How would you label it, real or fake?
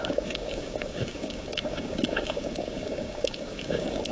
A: fake